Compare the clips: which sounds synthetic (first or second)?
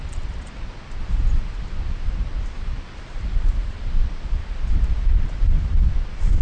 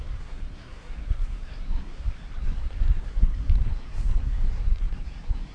second